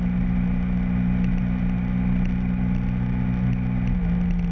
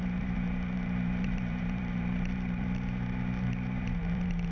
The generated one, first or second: second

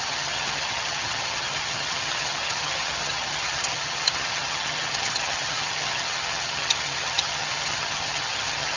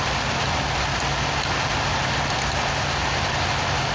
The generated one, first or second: first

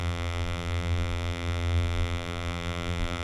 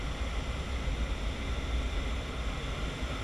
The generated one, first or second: first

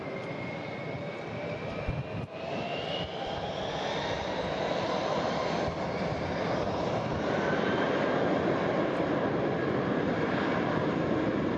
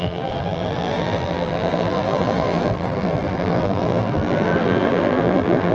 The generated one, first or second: second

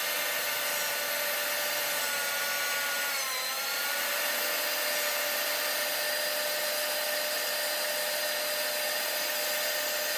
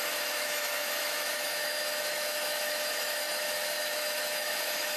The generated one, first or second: second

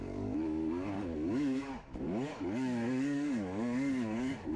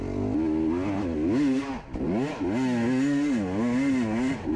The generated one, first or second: first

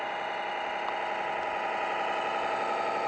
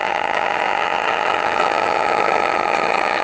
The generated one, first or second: second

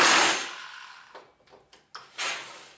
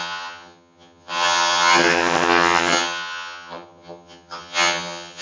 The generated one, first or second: second